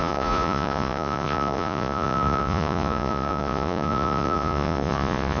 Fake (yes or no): yes